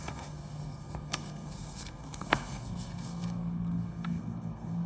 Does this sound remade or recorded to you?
remade